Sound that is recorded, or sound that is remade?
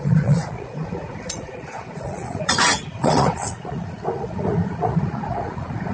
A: remade